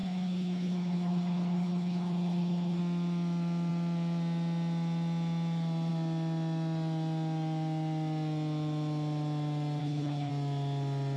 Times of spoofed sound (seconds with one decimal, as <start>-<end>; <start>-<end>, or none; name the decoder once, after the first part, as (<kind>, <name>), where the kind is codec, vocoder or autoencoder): 0.0-2.8 (codec, HILCodec); 9.8-10.3